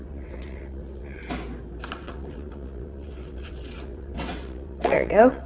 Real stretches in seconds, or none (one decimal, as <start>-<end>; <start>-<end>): 1.2-1.9